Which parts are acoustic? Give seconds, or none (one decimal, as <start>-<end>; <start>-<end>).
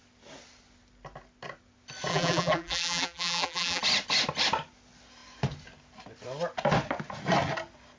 0.0-2.1; 3.8-8.0